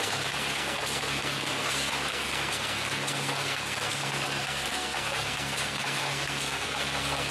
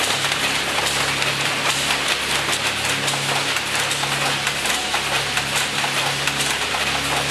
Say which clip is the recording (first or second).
second